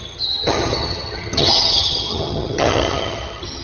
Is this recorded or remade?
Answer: remade